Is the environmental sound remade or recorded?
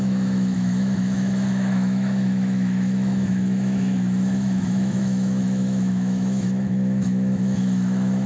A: remade